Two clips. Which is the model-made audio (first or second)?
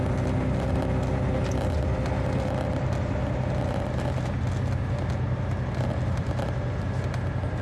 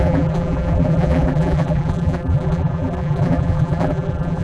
second